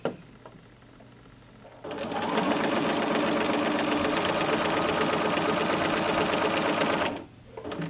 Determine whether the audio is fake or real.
real